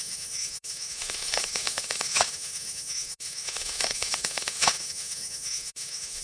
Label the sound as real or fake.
fake